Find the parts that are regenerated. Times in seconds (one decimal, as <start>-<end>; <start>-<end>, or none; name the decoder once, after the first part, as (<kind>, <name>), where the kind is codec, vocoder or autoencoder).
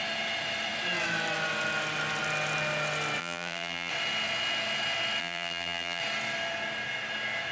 3.2-3.9 (vocoder, BigVGAN v2); 5.2-6.0